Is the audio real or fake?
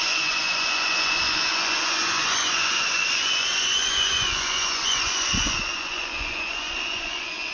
fake